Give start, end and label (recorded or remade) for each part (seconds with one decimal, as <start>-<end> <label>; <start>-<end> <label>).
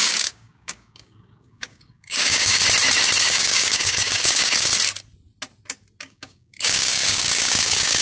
0.0-2.6 remade; 2.6-3.2 recorded; 3.2-4.7 remade; 4.7-6.0 recorded; 6.0-8.0 remade